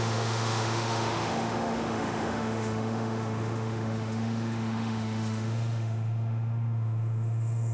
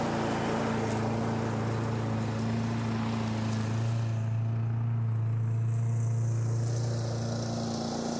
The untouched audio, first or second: second